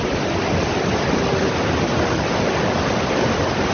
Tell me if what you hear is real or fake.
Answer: real